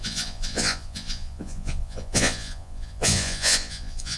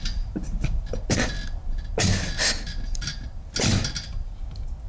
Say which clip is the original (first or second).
second